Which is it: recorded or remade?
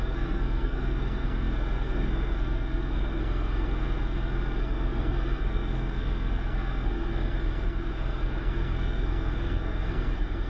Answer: remade